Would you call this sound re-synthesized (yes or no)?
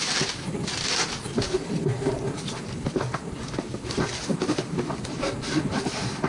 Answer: no